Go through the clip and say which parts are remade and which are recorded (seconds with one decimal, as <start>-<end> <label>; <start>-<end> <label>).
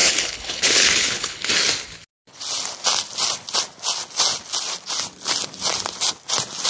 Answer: 0.0-1.5 remade; 1.5-6.7 recorded